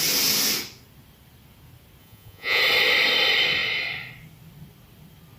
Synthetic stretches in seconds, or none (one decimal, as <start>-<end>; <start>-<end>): 2.0-2.6